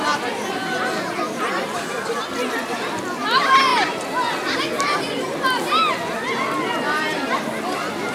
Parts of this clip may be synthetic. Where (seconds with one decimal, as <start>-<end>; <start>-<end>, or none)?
none